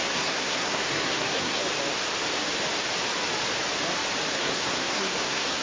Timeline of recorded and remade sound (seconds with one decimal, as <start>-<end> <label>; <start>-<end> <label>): 0.0-1.6 remade; 1.6-4.3 recorded; 4.3-5.6 remade